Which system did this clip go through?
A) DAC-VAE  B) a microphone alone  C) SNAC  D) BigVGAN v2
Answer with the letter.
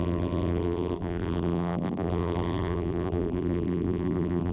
D